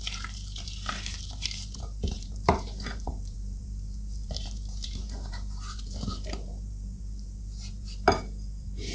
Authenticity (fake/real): fake